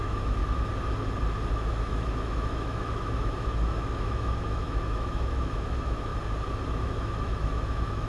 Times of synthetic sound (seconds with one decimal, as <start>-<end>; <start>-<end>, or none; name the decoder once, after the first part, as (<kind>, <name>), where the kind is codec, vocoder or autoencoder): 0.0-0.4 (autoencoder, DAC-VAE); 1.5-6.1; 6.7-8.1